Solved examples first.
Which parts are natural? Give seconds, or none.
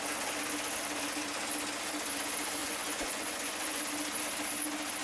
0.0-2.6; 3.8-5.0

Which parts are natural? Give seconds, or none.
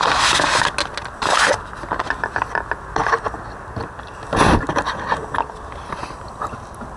0.0-7.0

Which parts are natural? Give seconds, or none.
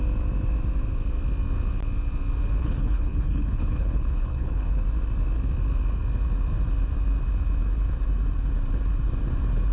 0.0-2.6; 4.8-9.7